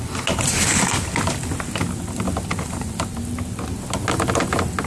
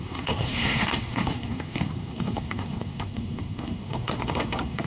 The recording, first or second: first